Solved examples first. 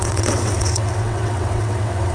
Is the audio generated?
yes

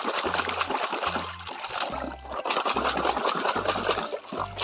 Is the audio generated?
no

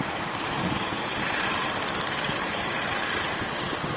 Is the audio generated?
yes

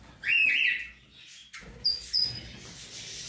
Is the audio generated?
no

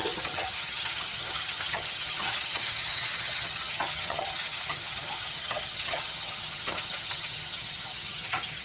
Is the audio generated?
yes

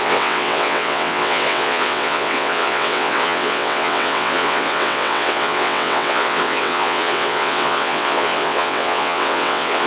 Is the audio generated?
yes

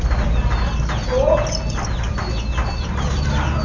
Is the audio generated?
no